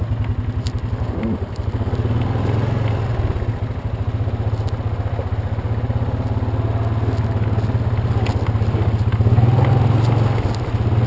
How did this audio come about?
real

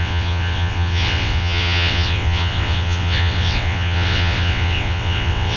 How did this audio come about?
fake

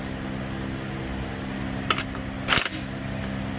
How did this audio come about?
real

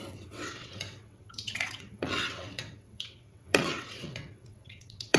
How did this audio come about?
fake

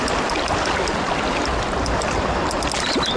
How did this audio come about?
real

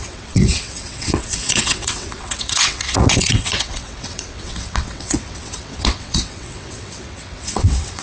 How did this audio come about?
fake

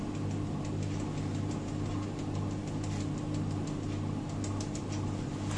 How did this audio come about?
real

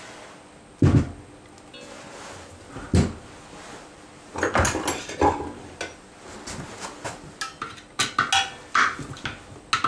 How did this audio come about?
real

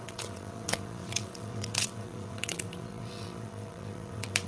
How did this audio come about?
fake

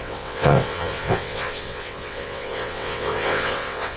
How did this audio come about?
fake